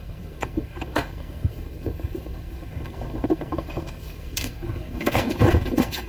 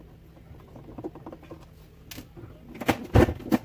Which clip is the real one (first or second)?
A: second